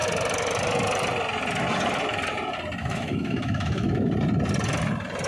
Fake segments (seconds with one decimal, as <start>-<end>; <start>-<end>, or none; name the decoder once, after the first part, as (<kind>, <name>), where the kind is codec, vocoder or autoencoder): 2.8-4.1 (autoencoder, DAC-VAE)